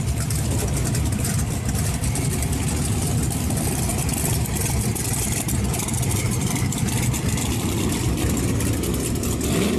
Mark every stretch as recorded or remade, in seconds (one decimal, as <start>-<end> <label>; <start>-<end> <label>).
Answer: 0.0-1.4 recorded; 1.4-2.5 remade; 2.5-3.9 recorded; 3.9-8.0 remade; 8.0-9.8 recorded